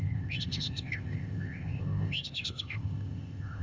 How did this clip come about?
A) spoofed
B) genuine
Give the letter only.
A